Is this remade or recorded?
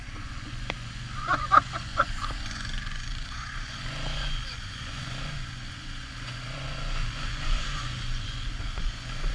remade